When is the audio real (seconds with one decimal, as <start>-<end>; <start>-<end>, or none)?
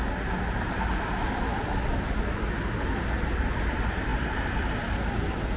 0.0-5.6